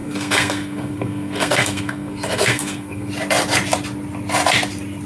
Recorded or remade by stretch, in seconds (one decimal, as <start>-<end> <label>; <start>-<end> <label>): 0.0-3.1 remade; 3.1-5.1 recorded